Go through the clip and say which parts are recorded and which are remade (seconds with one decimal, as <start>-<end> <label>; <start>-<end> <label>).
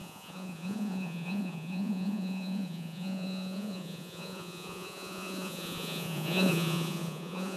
0.0-7.6 remade